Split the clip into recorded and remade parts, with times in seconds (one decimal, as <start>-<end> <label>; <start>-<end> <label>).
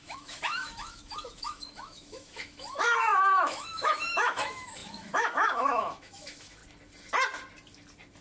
0.0-6.6 remade; 6.6-8.2 recorded